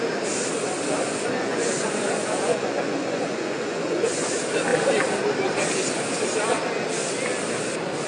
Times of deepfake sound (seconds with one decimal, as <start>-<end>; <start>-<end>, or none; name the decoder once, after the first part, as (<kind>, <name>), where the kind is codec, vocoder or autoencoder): 1.1-4.3 (vocoder, Vocos)